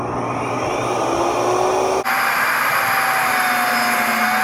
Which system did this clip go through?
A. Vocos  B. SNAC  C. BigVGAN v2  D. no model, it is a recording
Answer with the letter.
D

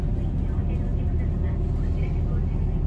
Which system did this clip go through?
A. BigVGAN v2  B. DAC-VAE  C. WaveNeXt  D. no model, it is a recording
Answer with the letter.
D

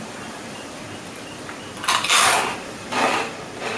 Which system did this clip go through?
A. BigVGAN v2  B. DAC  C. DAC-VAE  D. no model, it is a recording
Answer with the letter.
A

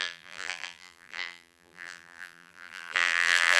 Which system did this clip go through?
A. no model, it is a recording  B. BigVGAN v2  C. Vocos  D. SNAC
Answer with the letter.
B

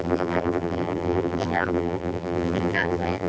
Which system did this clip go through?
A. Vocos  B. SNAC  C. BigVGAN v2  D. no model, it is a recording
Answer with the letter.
C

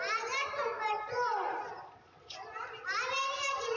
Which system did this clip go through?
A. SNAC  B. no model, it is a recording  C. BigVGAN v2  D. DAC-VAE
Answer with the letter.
C